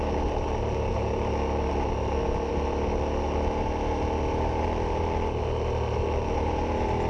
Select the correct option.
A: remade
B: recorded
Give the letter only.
B